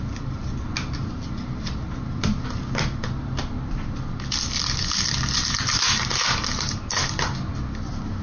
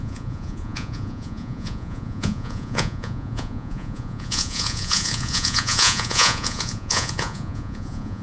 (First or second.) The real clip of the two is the first